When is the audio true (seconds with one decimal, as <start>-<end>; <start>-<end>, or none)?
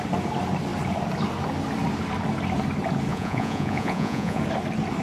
0.0-3.1; 4.4-5.0